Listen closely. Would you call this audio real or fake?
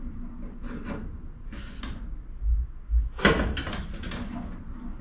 real